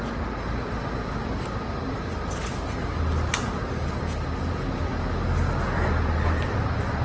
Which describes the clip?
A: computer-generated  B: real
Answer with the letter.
B